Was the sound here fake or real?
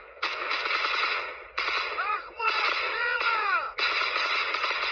fake